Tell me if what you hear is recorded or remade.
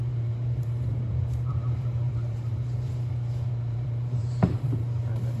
remade